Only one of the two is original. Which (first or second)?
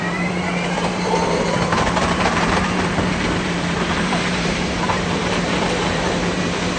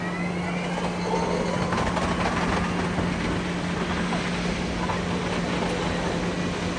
second